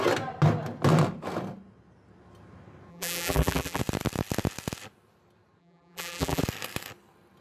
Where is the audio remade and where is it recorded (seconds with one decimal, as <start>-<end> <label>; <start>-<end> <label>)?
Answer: 0.0-2.9 recorded; 2.9-3.8 remade; 3.8-5.6 recorded; 5.6-6.4 remade; 6.4-7.4 recorded